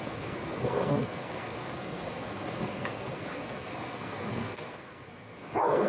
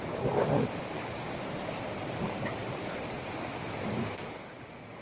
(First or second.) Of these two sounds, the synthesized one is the first